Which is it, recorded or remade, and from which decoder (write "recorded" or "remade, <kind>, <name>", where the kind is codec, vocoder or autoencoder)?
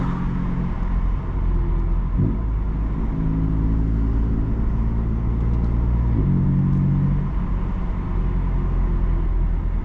recorded